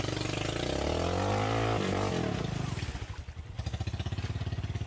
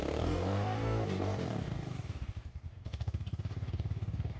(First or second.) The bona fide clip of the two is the first